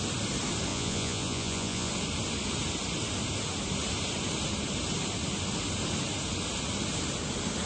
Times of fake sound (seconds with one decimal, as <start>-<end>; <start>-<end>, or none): 0.7-1.9